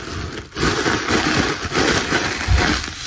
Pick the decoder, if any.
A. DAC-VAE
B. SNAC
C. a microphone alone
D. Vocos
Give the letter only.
C